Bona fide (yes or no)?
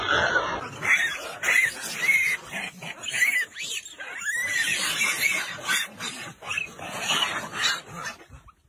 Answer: yes